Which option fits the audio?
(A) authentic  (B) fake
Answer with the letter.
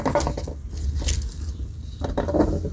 A